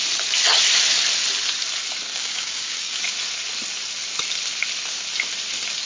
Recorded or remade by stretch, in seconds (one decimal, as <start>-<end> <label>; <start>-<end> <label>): 0.0-2.1 recorded; 2.1-3.0 remade; 3.0-5.9 recorded